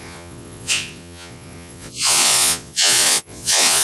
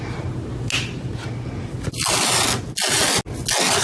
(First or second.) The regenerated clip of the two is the first